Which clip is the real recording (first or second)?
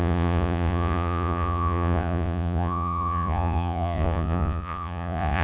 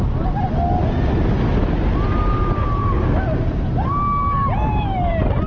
second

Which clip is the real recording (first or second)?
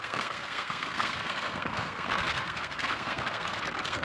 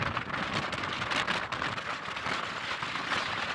second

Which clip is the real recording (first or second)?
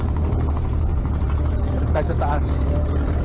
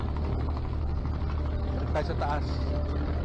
second